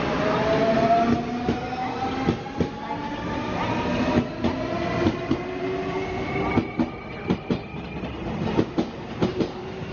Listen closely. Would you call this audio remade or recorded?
recorded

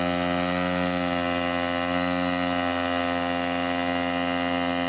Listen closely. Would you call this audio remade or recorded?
recorded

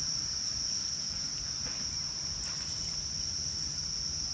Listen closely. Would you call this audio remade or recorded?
recorded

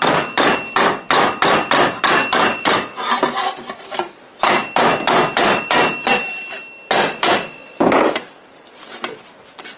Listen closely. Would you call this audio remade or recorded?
recorded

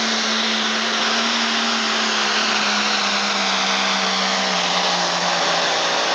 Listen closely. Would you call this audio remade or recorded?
recorded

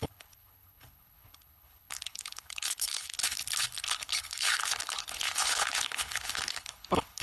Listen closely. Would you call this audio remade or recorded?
remade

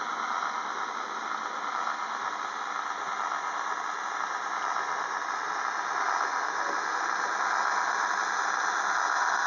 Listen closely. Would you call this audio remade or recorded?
recorded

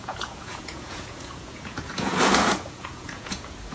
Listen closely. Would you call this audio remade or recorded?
remade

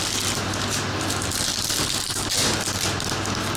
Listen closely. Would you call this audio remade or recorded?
recorded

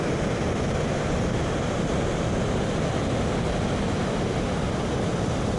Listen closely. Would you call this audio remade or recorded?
recorded